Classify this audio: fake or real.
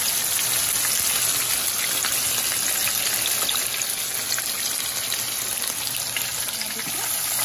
real